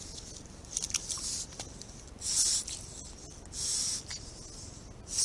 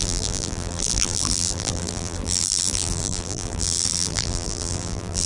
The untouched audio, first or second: first